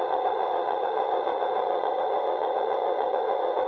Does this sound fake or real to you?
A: fake